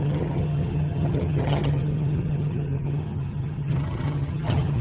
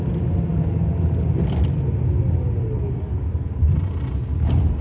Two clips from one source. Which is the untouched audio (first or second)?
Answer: second